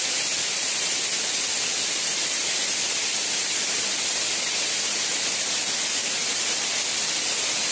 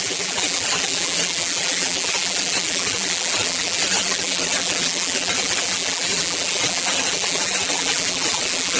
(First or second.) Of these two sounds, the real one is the first